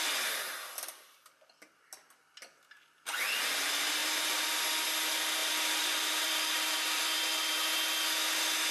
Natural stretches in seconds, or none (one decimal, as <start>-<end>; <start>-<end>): 0.0-4.0; 4.6-5.4; 7.0-8.7